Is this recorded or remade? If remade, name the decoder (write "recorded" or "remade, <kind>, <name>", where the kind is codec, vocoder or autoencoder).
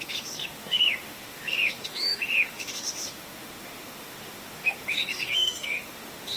remade, autoencoder, DAC-VAE